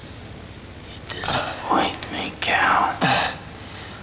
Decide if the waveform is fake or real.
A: real